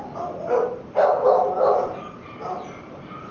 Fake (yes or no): no